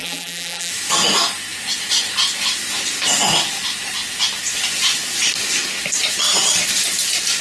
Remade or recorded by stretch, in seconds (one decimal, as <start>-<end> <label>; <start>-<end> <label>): 0.0-0.7 remade; 0.7-7.4 recorded